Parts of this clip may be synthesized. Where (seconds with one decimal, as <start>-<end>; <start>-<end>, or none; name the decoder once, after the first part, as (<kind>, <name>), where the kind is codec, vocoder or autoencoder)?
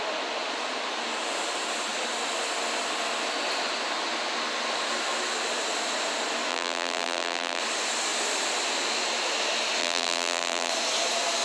6.5-7.6 (vocoder, BigVGAN v2); 9.8-10.7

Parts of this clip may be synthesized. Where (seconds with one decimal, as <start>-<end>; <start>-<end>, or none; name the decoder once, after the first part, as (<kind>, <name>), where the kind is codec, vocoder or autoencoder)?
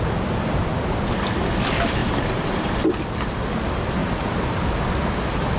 2.0-2.9 (vocoder, BigVGAN v2)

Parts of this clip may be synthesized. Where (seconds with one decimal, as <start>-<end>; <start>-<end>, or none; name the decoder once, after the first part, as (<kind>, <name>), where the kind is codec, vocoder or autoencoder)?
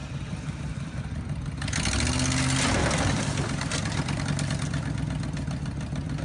0.0-1.2 (vocoder, BigVGAN v2); 2.8-4.2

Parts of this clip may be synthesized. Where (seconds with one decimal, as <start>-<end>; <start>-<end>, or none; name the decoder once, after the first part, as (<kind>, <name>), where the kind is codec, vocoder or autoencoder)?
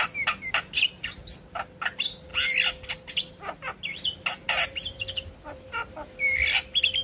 none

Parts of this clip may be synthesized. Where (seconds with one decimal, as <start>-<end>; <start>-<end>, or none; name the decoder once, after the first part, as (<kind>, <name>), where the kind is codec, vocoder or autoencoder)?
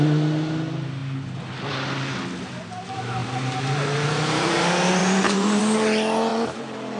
3.2-4.6 (vocoder, BigVGAN v2); 5.0-5.6; 6.3-7.0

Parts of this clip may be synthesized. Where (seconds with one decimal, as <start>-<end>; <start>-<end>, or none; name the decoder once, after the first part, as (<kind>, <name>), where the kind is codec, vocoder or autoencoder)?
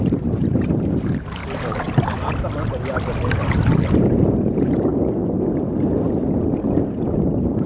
0.0-1.4 (vocoder, BigVGAN v2); 4.0-4.9; 6.7-7.7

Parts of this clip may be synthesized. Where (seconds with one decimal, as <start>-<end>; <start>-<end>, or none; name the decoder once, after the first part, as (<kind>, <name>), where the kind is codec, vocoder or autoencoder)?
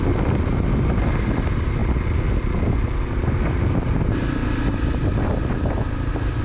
none